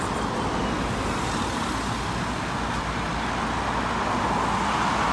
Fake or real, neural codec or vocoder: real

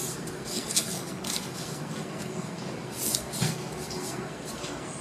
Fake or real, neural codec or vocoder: fake, codec, SNAC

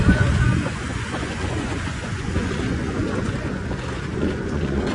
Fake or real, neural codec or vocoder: fake, vocoder, Vocos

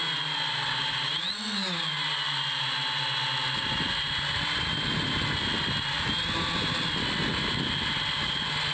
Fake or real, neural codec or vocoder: real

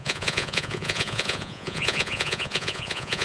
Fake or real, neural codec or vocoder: fake, vocoder, Vocos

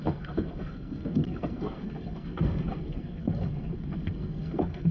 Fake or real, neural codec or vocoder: fake, codec, SNAC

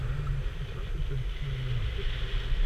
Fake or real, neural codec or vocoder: real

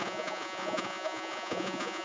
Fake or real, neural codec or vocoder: fake, vocoder, Vocos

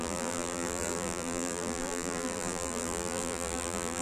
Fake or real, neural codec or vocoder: fake, vocoder, BigVGAN v2